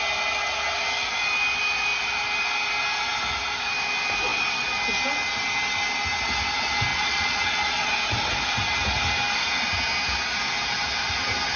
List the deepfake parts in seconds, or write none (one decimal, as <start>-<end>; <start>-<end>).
6.9-7.9